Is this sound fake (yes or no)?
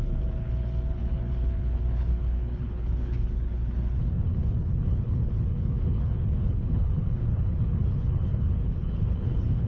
yes